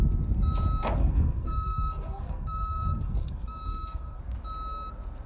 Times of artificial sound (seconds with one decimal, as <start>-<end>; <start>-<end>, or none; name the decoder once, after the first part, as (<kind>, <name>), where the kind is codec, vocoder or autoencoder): 1.0-4.2 (codec, SNAC)